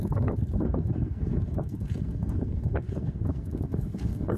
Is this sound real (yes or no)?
no